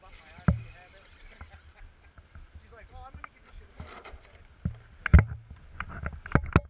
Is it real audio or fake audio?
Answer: real